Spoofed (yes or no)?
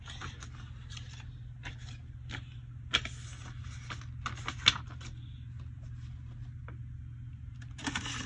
no